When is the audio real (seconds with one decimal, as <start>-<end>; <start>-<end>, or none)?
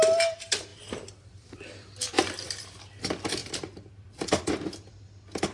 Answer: 0.0-0.7; 2.5-3.4; 5.0-5.5